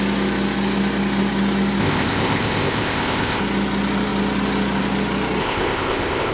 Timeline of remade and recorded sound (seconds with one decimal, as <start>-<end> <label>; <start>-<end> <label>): 0.0-1.8 recorded; 1.8-3.4 remade; 3.4-5.4 recorded; 5.4-6.3 remade